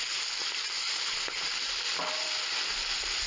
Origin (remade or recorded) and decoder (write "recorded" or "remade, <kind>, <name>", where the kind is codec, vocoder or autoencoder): recorded